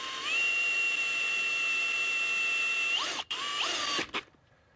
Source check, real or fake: real